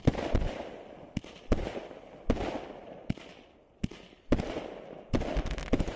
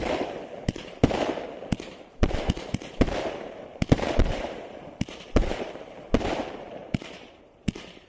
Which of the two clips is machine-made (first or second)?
second